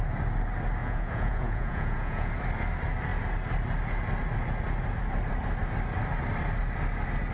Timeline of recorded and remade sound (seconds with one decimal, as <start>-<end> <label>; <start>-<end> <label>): 0.0-0.8 recorded; 0.8-2.3 remade; 2.3-7.3 recorded